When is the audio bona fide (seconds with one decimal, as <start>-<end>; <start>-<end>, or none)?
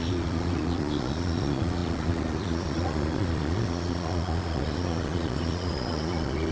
none